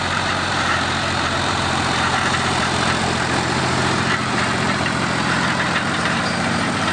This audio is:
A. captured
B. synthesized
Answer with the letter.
B